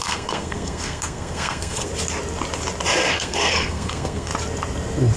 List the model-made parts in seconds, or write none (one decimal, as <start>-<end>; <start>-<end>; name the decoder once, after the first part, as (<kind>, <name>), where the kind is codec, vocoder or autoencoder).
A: 0.0-1.9 (codec, SNAC); 3.1-4.3